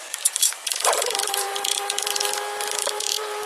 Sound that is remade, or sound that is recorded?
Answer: remade